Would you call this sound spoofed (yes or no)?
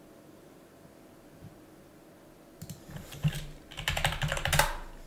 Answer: no